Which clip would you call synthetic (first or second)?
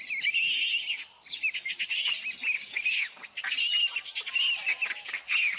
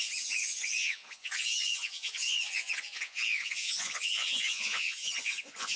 second